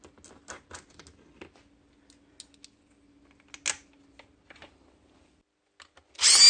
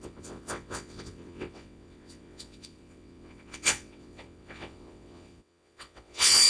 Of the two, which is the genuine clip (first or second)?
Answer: first